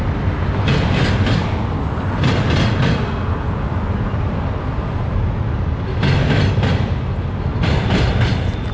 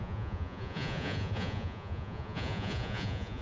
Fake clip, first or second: second